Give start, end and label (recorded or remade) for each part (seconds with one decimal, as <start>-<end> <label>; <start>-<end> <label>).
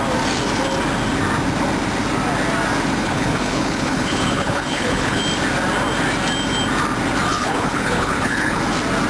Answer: 0.0-3.0 recorded; 3.0-5.2 remade; 5.2-7.3 recorded; 7.3-8.6 remade; 8.6-9.1 recorded